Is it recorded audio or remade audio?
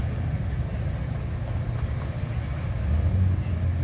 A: recorded